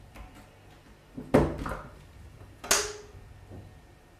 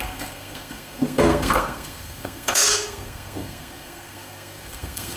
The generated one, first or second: second